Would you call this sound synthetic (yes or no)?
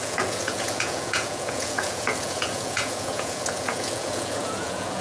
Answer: yes